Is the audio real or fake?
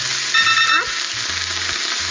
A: real